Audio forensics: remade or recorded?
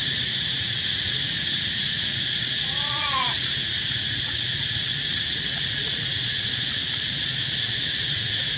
remade